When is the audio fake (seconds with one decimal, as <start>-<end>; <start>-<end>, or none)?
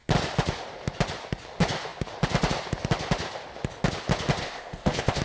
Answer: 4.4-5.2